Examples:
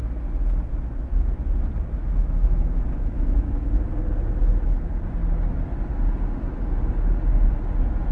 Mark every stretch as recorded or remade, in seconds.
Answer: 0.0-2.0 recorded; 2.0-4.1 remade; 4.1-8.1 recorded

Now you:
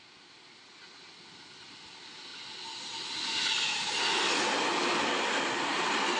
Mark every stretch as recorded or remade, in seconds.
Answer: 0.0-6.2 recorded

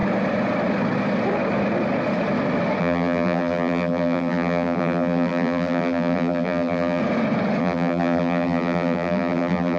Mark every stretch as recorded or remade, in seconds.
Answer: 0.0-2.8 recorded; 2.8-7.0 remade; 7.0-7.6 recorded; 7.6-9.8 remade

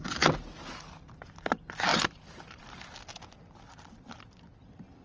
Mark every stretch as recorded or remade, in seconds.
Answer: 0.0-5.0 recorded

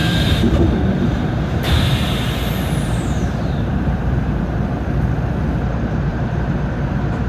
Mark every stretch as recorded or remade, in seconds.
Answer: 0.0-4.4 remade; 4.4-6.1 recorded; 6.1-6.6 remade; 6.6-7.3 recorded

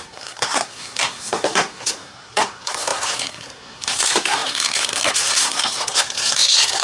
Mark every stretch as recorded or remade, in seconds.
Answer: 0.0-6.8 remade

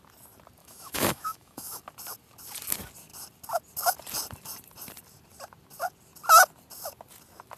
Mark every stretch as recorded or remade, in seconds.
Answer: 0.0-0.6 recorded; 0.6-1.8 remade; 1.8-7.6 recorded